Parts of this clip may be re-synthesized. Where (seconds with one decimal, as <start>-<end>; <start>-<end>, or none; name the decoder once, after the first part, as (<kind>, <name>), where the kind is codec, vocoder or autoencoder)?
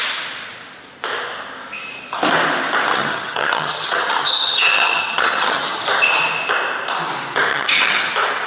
2.9-5.8 (vocoder, HiFi-GAN); 7.5-8.0